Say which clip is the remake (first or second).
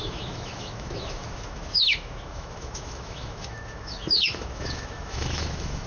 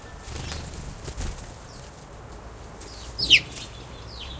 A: first